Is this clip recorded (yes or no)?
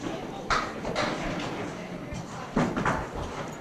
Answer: yes